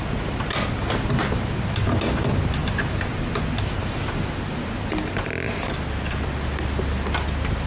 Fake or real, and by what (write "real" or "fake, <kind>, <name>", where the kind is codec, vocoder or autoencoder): real